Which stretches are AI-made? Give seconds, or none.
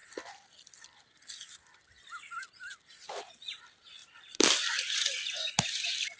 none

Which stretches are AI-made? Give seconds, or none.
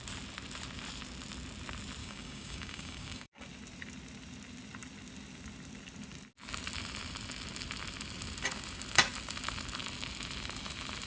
2.0-3.4 (codec, DAC)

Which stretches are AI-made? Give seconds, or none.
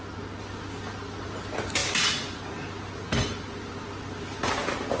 none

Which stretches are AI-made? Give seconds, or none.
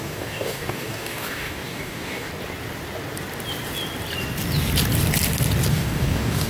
0.0-2.3 (codec, DAC); 5.7-6.5